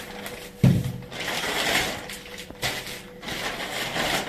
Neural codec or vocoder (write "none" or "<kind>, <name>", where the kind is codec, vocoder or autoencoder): none